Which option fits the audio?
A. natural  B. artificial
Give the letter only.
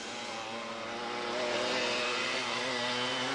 A